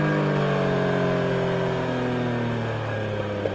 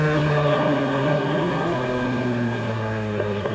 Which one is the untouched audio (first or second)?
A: first